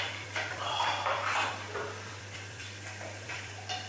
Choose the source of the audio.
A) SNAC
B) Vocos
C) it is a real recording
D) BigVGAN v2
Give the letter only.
D